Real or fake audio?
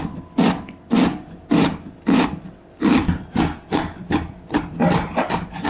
real